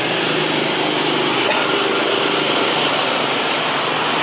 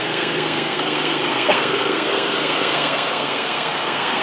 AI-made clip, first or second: second